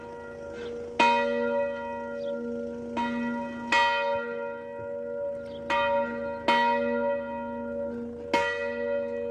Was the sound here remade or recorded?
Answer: recorded